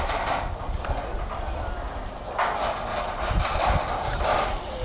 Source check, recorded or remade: recorded